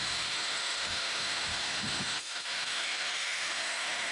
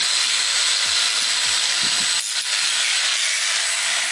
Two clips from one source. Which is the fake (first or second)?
first